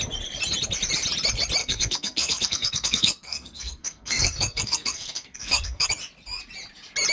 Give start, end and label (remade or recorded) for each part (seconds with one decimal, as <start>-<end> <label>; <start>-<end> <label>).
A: 0.0-1.6 recorded; 1.6-5.9 remade; 5.9-7.1 recorded

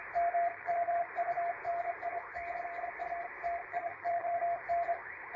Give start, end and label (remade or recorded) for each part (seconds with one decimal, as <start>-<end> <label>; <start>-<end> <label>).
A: 0.0-0.5 recorded; 0.5-1.1 remade; 1.1-3.7 recorded; 3.7-4.4 remade; 4.4-5.4 recorded

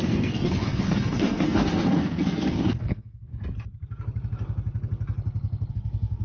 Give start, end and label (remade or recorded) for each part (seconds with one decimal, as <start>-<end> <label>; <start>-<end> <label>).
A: 0.0-3.3 remade; 3.3-5.7 recorded; 5.7-6.2 remade

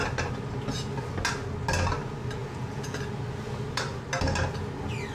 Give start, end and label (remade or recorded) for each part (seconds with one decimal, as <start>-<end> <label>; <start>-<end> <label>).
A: 0.0-2.4 recorded; 2.4-3.0 remade; 3.0-5.1 recorded

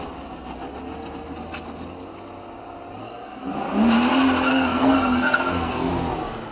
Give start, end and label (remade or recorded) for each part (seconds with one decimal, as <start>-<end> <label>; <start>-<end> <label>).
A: 0.0-3.0 recorded; 3.0-3.5 remade; 3.5-4.5 recorded; 4.5-5.9 remade; 5.9-6.5 recorded